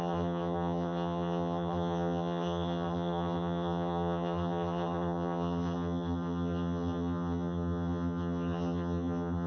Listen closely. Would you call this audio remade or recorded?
remade